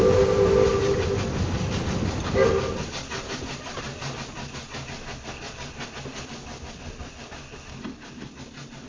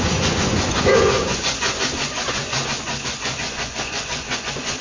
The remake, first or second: second